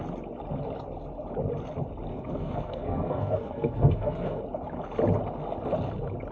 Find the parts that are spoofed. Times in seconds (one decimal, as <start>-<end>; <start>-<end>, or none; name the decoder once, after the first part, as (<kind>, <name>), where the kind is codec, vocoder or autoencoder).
2.1-4.4 (codec, SNAC)